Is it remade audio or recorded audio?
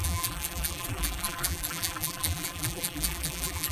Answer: remade